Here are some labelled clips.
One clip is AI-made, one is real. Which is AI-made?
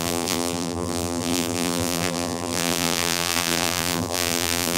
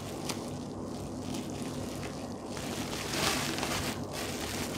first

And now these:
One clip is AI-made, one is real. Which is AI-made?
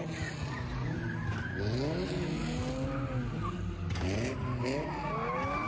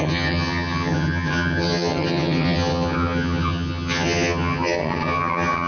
second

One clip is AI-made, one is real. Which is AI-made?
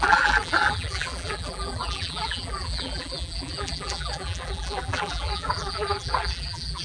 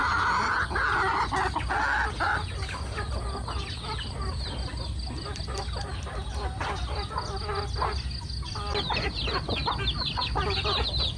first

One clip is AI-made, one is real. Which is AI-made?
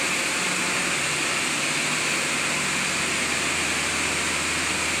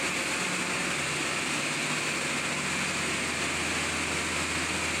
first